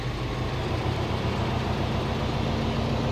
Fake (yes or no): no